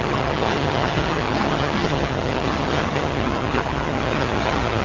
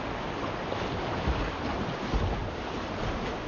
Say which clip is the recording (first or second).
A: second